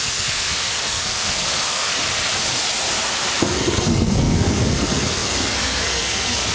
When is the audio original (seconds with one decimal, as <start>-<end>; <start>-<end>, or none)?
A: 1.9-3.4